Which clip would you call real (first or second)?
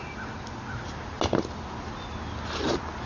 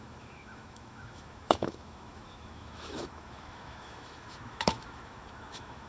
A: first